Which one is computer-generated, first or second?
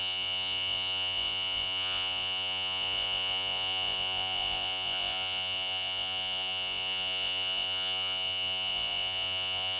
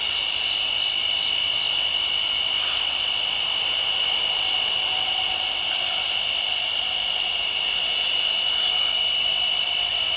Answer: first